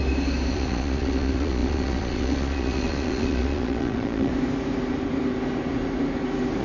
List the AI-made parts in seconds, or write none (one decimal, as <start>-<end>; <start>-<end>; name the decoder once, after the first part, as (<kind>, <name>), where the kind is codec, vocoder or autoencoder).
0.5-4.3 (vocoder, Vocos)

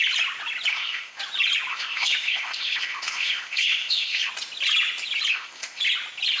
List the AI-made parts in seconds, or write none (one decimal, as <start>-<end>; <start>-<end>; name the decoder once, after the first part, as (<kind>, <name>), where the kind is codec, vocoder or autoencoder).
0.7-1.2 (codec, ZipCodec); 1.7-4.3; 5.3-5.8

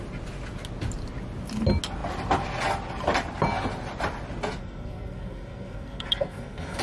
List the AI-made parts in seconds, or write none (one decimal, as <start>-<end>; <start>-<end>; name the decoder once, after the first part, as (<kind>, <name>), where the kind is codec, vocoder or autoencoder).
4.6-6.8 (codec, SNAC)